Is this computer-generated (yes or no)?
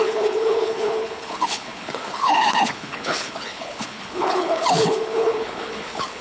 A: yes